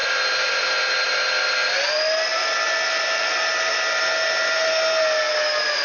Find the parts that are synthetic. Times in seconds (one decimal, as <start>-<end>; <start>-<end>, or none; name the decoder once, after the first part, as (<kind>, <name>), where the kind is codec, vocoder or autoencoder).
none